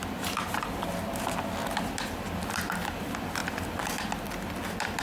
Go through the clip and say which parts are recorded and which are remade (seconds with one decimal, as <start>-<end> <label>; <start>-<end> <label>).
0.0-5.0 recorded